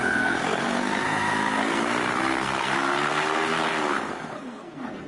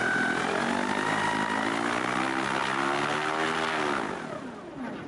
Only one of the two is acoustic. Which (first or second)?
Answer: second